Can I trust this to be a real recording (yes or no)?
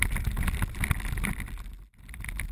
yes